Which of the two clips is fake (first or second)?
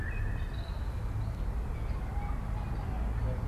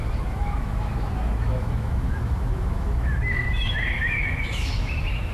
second